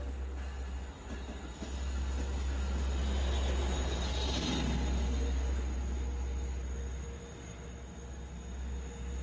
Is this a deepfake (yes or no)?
no